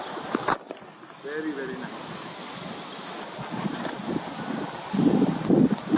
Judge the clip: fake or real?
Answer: real